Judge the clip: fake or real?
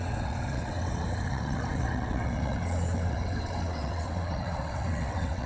fake